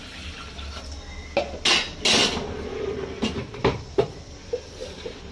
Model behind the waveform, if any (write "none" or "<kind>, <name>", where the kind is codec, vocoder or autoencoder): none